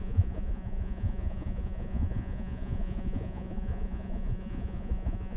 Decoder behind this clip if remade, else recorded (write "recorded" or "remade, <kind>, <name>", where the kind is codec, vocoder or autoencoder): remade, vocoder, Vocos